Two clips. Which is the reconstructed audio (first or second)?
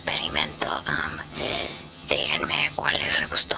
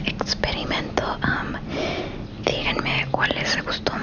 first